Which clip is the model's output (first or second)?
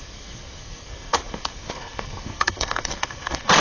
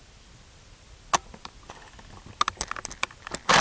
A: first